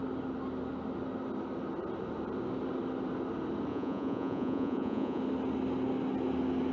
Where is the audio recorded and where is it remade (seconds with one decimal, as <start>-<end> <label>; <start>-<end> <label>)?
0.0-3.7 recorded; 3.7-5.2 remade; 5.2-6.7 recorded